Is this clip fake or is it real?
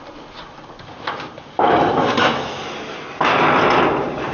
real